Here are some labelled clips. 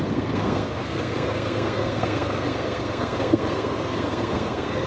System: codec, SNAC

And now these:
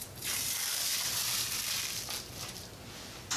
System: none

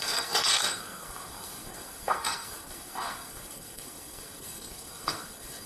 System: codec, SNAC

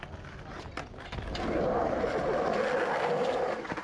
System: none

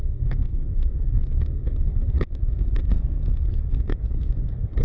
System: codec, SNAC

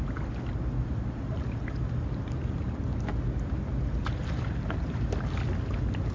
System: none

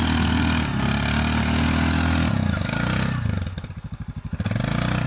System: none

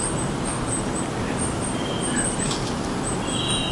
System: none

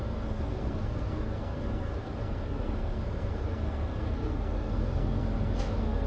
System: codec, SNAC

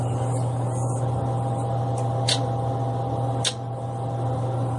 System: none